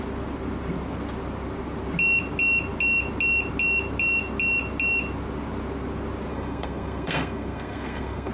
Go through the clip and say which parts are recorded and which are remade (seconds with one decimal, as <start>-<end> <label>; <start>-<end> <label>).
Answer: 0.0-6.3 recorded; 6.3-8.3 remade